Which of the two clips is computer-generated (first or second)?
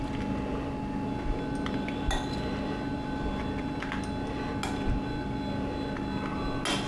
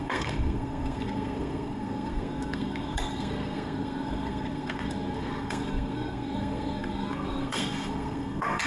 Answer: second